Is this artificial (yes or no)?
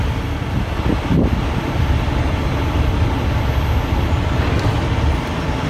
no